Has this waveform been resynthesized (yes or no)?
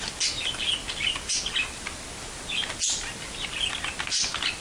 no